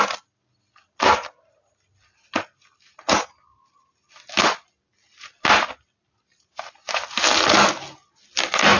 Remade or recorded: recorded